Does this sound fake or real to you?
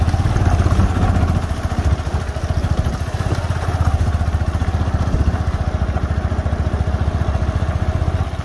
real